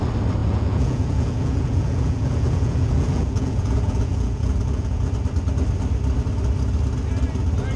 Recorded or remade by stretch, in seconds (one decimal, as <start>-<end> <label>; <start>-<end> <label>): 0.0-0.4 recorded; 0.4-5.1 remade; 5.1-7.8 recorded

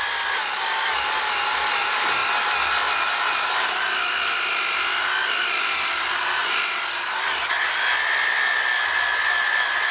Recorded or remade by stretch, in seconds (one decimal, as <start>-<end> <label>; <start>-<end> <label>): 0.0-9.9 recorded

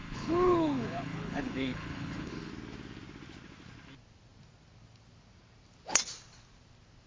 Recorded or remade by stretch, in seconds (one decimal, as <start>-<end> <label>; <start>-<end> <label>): 0.0-2.5 remade; 2.5-7.1 recorded